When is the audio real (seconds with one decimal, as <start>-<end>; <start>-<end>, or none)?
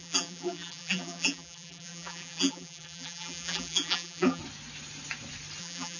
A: 4.4-5.6